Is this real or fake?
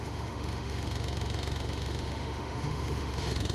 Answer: fake